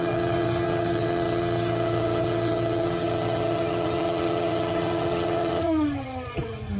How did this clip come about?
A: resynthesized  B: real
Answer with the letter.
A